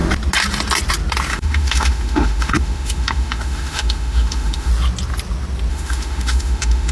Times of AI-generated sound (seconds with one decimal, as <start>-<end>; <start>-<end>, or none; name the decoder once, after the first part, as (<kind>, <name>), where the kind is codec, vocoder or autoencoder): 1.3-4.7 (autoencoder, DAC-VAE); 5.7-6.9